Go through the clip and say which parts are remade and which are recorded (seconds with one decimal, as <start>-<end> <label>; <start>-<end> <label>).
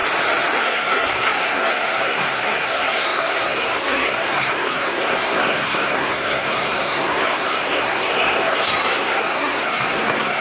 0.0-0.6 recorded; 0.6-10.4 remade